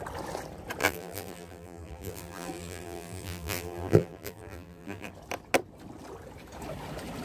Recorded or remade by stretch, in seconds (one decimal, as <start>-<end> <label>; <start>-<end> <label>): 0.0-0.8 recorded; 0.8-5.1 remade; 5.1-7.2 recorded